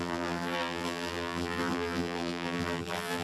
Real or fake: fake